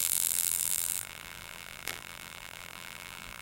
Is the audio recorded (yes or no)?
no